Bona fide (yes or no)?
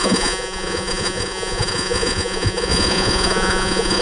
no